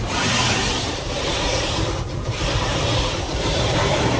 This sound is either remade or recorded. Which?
remade